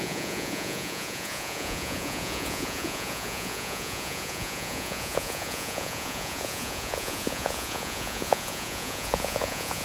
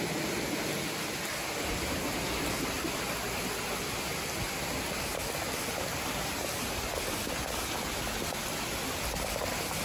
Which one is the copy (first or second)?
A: first